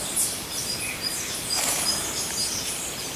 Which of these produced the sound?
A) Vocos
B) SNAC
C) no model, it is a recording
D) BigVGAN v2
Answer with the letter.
D